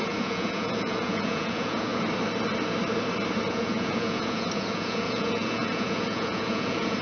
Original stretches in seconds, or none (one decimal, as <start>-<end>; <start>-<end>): 1.9-3.5